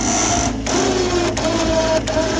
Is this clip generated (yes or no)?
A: no